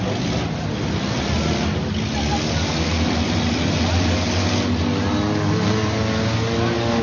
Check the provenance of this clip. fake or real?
real